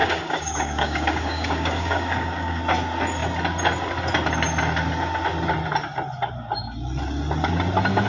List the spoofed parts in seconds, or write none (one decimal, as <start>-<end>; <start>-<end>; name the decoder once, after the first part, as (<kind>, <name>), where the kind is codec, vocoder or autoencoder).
0.0-2.6 (codec, DAC)